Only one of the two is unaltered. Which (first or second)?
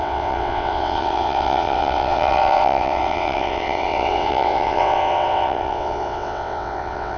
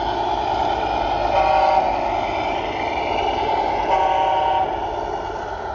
second